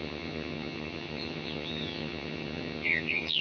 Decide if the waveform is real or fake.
fake